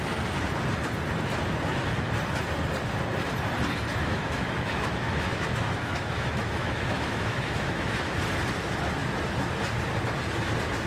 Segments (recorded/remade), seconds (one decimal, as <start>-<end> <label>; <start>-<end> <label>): 0.0-4.0 recorded; 4.0-8.2 remade; 8.2-10.9 recorded